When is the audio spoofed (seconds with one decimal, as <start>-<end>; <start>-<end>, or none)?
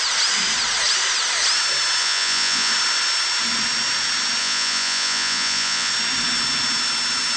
2.0-2.7; 4.4-5.9